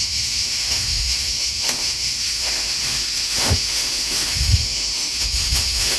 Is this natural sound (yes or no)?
no